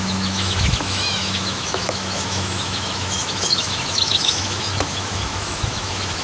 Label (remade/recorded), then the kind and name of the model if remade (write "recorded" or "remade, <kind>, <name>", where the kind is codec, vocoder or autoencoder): remade, autoencoder, DAC-VAE